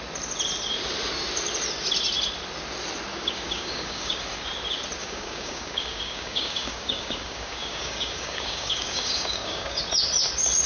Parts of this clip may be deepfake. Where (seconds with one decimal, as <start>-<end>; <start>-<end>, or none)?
3.1-4.5; 5.0-9.8